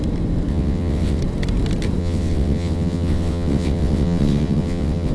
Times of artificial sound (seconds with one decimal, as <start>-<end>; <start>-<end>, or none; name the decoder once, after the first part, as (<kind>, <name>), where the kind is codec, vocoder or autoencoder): 0.5-1.2 (vocoder, WaveNeXt); 2.0-5.1